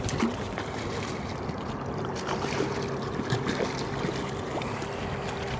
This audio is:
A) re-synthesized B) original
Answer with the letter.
B